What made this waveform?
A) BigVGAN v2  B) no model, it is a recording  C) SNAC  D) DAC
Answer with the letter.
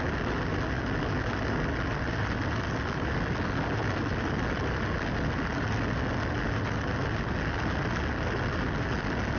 B